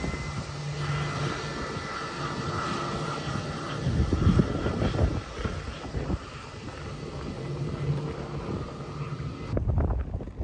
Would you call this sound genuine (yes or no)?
yes